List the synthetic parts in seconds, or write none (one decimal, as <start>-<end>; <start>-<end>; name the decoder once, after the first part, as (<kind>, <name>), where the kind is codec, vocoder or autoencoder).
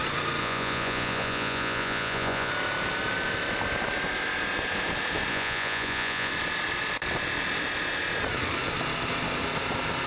0.4-2.5 (vocoder, Vocos); 5.3-6.3